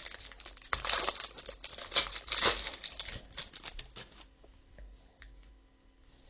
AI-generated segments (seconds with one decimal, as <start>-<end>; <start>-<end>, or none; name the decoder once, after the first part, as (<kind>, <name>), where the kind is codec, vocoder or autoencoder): none